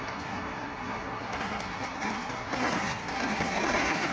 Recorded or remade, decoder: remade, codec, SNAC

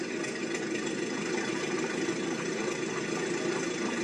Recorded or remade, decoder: recorded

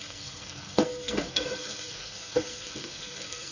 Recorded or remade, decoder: remade, codec, SNAC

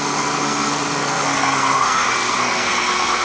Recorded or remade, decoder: remade, codec, SNAC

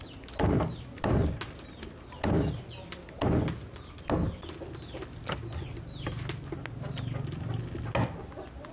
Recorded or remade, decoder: recorded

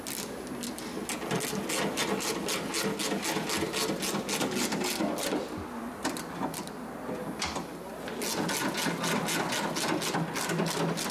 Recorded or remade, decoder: recorded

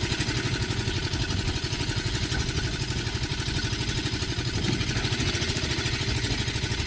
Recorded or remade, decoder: remade, vocoder, Vocos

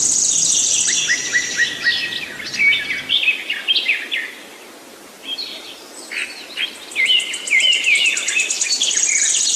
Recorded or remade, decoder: recorded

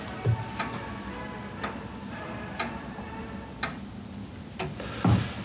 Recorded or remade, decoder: recorded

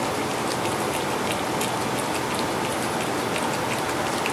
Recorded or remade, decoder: recorded